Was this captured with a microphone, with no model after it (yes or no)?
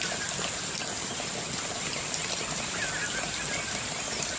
yes